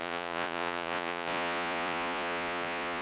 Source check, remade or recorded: remade